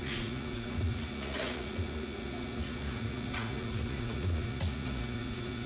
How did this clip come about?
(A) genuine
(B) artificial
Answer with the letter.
B